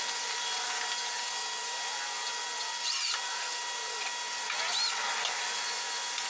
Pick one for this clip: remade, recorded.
recorded